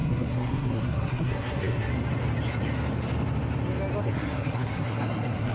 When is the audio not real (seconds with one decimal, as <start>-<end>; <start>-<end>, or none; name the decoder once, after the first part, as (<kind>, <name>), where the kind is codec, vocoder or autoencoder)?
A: 0.0-1.9 (codec, SNAC); 4.0-5.5